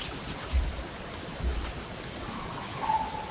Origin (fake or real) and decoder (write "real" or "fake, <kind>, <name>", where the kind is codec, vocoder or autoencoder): real